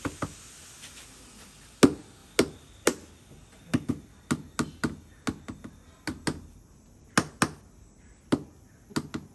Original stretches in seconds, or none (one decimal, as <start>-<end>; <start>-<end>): 0.0-9.3